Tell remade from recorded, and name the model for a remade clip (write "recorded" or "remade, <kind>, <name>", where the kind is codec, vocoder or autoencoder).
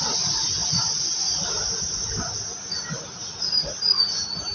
recorded